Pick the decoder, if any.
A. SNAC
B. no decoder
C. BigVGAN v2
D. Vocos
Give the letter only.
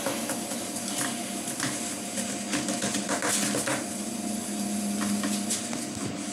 B